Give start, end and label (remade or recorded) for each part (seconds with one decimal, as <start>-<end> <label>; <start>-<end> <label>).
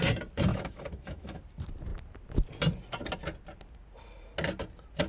0.0-0.5 recorded; 0.5-1.4 remade; 1.4-5.1 recorded